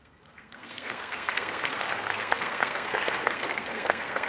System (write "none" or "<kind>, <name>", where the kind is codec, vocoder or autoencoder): codec, SNAC